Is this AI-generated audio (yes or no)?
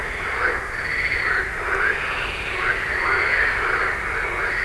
no